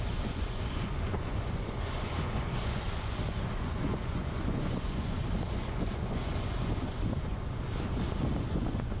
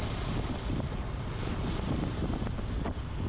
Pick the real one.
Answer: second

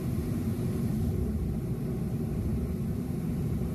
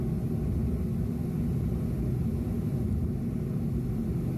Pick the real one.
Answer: second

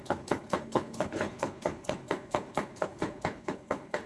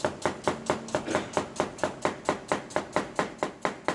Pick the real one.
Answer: second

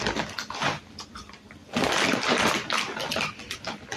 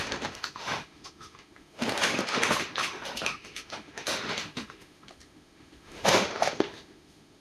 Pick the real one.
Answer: first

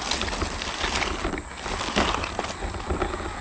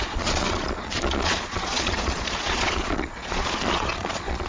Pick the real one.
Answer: first